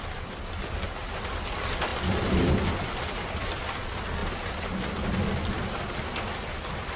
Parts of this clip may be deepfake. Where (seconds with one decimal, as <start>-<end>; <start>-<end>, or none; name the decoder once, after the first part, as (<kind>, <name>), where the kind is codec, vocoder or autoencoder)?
none

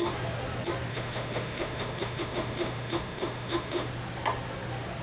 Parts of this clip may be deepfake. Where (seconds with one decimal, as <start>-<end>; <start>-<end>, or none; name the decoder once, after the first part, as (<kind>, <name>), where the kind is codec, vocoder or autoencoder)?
0.9-3.9 (autoencoder, DAC-VAE)